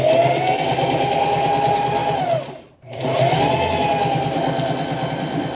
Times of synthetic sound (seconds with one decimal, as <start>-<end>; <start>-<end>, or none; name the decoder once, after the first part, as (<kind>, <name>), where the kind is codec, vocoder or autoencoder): none